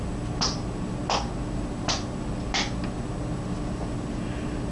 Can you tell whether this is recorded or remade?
recorded